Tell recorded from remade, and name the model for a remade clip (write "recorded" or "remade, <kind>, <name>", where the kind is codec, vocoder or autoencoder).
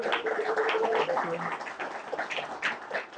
recorded